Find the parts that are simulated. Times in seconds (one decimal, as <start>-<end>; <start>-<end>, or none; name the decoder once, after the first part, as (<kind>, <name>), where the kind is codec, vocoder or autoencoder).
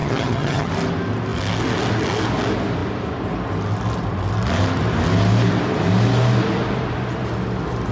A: 0.0-0.7 (vocoder, HiFi-GAN)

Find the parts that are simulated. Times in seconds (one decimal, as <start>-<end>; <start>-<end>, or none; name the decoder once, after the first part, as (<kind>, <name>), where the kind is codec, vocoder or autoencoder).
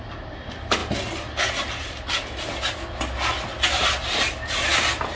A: none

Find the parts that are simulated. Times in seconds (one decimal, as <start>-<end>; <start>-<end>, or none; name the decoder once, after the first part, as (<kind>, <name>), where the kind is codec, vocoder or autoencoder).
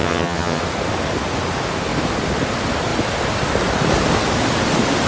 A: 0.0-0.6 (vocoder, HiFi-GAN)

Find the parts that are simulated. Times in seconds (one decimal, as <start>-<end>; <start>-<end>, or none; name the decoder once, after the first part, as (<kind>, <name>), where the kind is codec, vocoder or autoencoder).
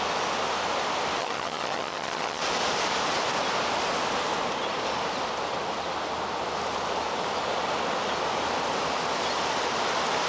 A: 1.2-2.4 (vocoder, HiFi-GAN)